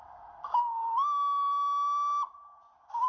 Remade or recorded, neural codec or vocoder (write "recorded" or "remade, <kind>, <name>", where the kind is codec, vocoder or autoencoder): recorded